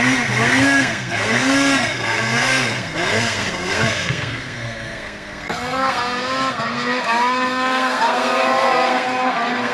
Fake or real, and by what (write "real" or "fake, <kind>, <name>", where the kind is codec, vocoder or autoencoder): fake, codec, SNAC